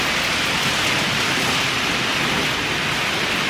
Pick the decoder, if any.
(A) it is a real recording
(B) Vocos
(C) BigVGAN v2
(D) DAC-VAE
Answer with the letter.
A